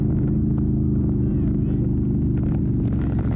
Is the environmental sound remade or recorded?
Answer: recorded